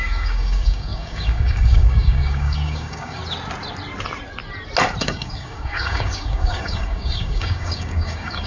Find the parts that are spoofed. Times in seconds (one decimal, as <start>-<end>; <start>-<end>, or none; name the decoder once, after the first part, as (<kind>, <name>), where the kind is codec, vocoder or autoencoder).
0.0-3.2 (codec, DAC); 5.0-8.5